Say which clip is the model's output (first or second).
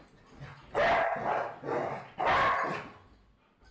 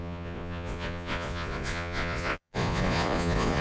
second